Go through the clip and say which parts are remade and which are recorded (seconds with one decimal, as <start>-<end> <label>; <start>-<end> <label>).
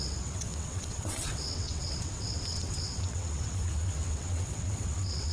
0.0-5.3 remade